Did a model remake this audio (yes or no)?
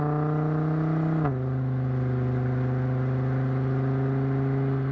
no